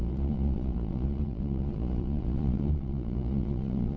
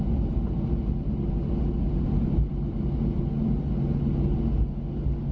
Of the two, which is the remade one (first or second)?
first